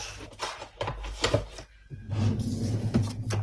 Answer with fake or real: real